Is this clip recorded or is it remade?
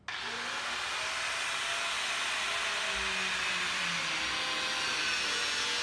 recorded